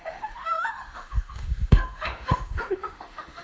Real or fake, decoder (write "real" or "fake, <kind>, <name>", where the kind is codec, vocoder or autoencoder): fake, autoencoder, DAC-VAE